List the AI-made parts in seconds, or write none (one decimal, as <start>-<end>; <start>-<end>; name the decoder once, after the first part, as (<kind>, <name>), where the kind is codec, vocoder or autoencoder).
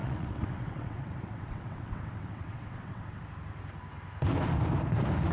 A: 0.0-3.2 (vocoder, WaveNeXt)